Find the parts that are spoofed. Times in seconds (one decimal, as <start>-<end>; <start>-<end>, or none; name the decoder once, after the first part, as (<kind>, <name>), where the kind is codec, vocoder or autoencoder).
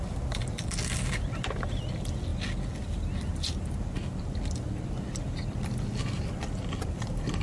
none